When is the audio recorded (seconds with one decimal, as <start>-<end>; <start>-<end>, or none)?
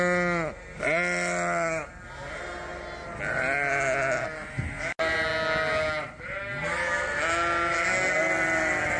0.0-9.0